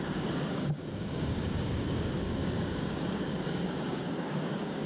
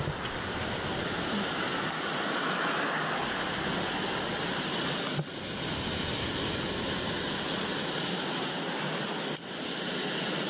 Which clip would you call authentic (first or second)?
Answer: second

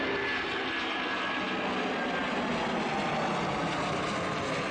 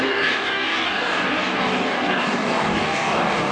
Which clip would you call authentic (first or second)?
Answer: first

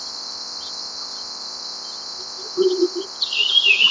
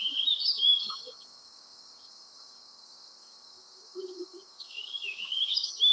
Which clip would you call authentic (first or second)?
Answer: first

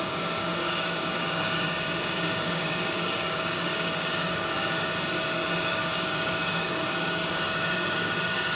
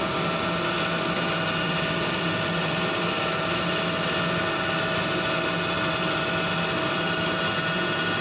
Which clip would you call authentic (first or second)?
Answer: second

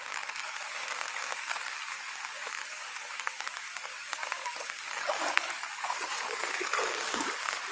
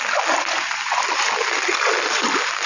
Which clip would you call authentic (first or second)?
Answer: second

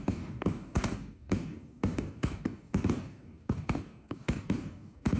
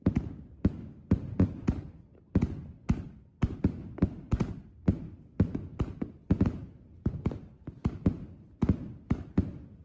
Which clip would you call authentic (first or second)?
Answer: second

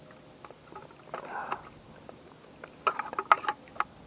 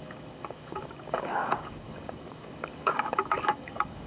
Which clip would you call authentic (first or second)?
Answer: first